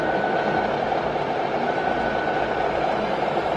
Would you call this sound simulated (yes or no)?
no